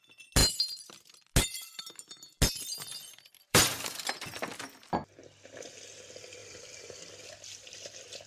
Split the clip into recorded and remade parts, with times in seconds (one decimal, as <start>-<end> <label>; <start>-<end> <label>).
0.0-3.0 recorded; 3.0-4.1 remade; 4.1-6.4 recorded; 6.4-7.0 remade; 7.0-8.3 recorded